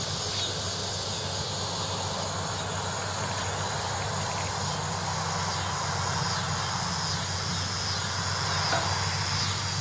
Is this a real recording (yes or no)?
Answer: yes